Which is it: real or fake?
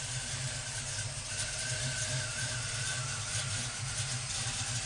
real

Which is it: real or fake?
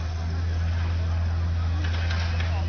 real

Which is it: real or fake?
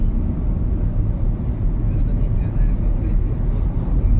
real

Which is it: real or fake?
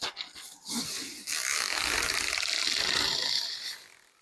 fake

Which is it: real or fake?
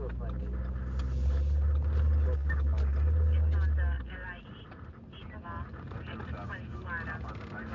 real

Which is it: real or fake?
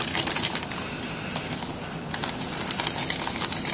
real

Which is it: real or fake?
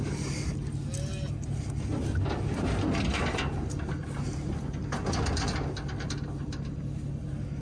real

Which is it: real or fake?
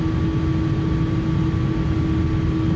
real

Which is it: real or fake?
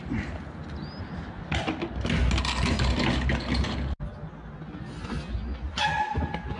real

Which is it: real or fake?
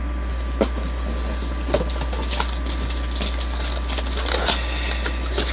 real